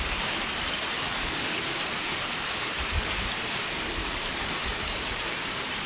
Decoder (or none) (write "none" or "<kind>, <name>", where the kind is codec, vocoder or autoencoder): vocoder, BigVGAN v2